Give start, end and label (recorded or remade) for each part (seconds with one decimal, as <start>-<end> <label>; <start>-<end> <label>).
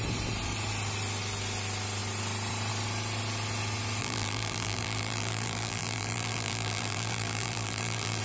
0.0-4.0 recorded; 4.0-8.2 remade